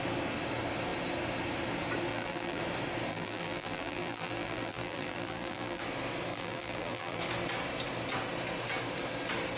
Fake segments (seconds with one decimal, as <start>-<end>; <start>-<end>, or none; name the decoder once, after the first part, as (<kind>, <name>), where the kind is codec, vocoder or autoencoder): 2.1-2.6 (vocoder, BigVGAN v2); 3.1-5.8; 6.3-7.2